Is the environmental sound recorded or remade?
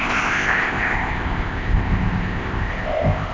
remade